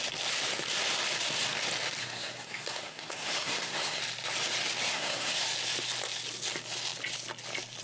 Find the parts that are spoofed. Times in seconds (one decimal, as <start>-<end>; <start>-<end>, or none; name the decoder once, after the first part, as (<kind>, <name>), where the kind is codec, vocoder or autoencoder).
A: 2.0-4.0 (codec, SNAC); 4.9-5.4